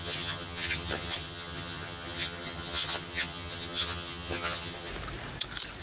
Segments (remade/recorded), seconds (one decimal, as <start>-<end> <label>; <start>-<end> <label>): 0.0-4.9 remade; 4.9-5.8 recorded